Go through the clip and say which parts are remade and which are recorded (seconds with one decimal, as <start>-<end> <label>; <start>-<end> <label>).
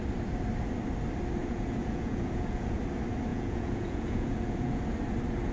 0.0-1.4 recorded; 1.4-2.8 remade; 2.8-3.3 recorded; 3.3-4.8 remade; 4.8-5.5 recorded